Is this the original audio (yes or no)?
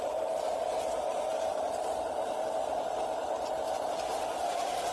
yes